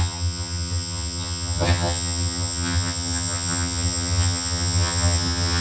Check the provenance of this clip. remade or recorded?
remade